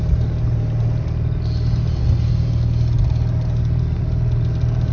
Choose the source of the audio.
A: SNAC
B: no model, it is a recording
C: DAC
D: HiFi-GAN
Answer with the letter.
B